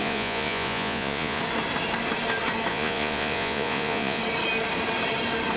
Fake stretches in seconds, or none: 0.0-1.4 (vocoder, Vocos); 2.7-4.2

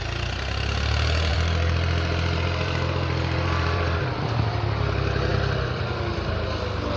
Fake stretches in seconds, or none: 1.3-4.5 (vocoder, BigVGAN v2); 5.3-6.0

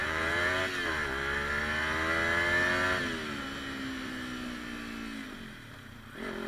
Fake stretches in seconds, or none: 0.0-0.6 (vocoder, Vocos)

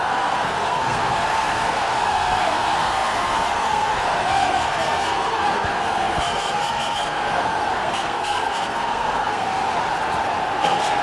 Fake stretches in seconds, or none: 0.0-9.5 (codec, SNAC); 10.6-11.0